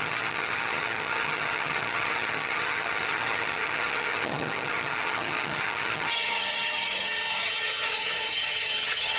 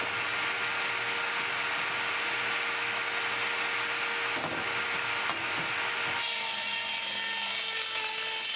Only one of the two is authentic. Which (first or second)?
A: second